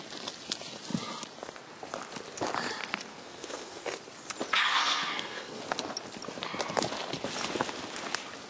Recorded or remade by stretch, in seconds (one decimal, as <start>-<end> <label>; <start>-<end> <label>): 0.0-3.1 recorded; 3.1-3.8 remade; 3.8-4.7 recorded; 4.7-5.6 remade; 5.6-8.5 recorded

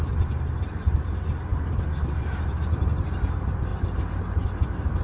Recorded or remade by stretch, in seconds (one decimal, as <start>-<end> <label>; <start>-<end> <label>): 0.0-5.0 recorded

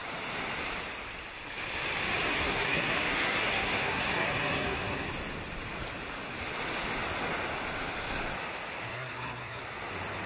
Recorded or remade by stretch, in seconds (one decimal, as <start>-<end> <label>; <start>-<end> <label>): 0.0-2.3 recorded; 2.3-5.1 remade; 5.1-8.9 recorded; 8.9-9.6 remade; 9.6-10.3 recorded

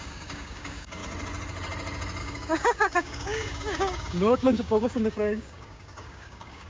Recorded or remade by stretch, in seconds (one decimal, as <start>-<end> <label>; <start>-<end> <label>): 0.0-1.0 remade; 1.0-2.2 recorded; 2.2-6.7 remade

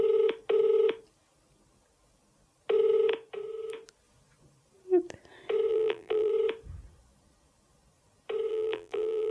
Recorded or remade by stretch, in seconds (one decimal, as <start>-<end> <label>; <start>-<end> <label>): 0.0-5.7 recorded; 5.7-6.3 remade; 6.3-8.5 recorded; 8.5-9.3 remade

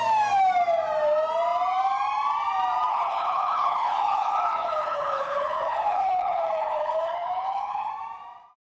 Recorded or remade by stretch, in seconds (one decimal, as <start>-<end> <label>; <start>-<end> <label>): 0.0-2.9 recorded; 2.9-7.9 remade; 7.9-8.8 recorded

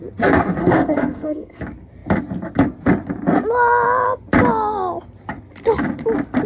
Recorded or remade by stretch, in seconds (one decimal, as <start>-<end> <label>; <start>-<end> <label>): 0.0-0.6 recorded; 0.6-1.6 remade; 1.6-6.5 recorded

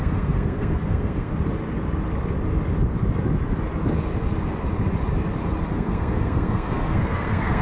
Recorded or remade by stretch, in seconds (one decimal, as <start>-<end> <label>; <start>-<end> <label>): 0.0-1.3 remade; 1.3-5.7 recorded; 5.7-7.6 remade